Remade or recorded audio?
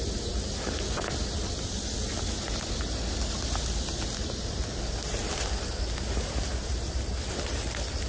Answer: recorded